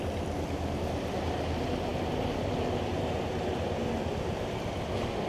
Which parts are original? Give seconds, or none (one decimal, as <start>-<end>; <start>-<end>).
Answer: 0.0-5.3